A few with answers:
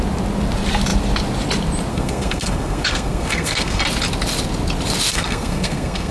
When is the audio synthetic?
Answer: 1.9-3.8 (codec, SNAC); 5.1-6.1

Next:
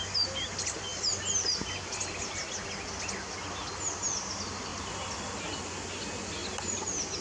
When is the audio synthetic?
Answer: none